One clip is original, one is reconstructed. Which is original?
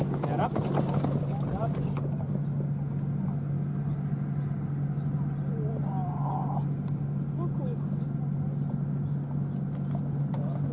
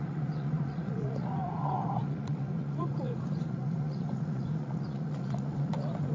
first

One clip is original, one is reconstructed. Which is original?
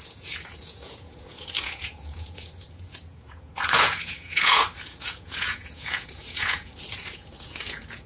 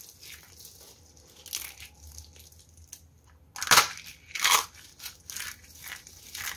second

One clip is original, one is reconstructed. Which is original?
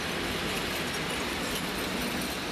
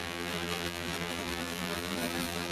first